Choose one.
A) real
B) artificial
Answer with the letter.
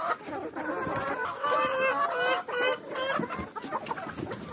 A